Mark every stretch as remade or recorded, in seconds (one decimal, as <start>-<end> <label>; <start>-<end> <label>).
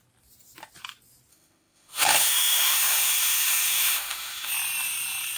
0.0-1.3 recorded; 1.3-4.5 remade; 4.5-5.4 recorded